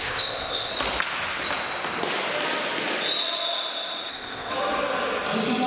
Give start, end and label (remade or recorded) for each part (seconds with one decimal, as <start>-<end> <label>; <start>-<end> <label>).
0.0-0.7 remade; 0.7-4.1 recorded; 4.1-4.5 remade; 4.5-5.7 recorded